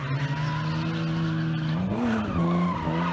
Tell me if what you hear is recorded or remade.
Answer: recorded